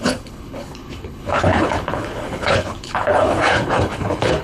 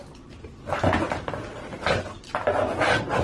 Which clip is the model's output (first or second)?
first